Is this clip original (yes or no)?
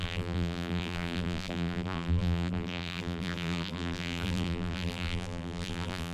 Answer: no